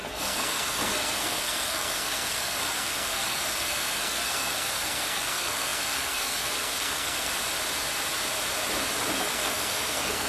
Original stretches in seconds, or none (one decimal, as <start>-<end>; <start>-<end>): 7.3-9.2